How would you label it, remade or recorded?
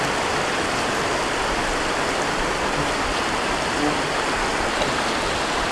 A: recorded